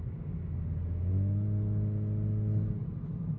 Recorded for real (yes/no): yes